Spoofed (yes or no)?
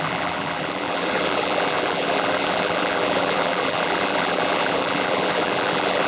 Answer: yes